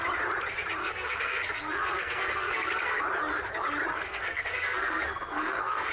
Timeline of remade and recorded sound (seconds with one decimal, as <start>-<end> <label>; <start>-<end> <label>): 0.0-0.8 recorded; 0.8-3.0 remade; 3.0-3.9 recorded; 3.9-5.9 remade